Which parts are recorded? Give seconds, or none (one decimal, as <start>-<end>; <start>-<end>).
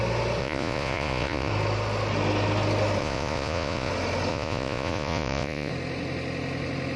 0.0-0.4; 1.5-3.0; 3.9-4.3; 5.7-7.0